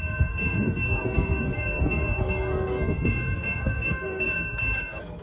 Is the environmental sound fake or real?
fake